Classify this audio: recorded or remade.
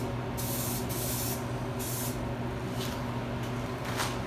recorded